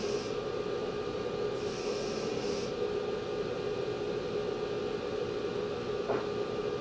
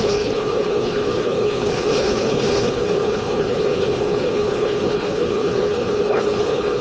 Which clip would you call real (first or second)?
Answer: first